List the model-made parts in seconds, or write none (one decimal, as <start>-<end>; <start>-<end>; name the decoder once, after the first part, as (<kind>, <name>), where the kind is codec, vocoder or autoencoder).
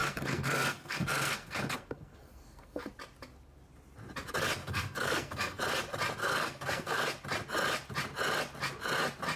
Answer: 0.0-2.9 (codec, SNAC); 4.6-5.6; 6.2-7.0